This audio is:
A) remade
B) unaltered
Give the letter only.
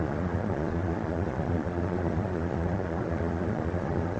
A